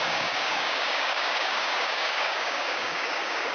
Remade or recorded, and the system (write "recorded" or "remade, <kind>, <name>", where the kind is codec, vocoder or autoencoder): remade, codec, DAC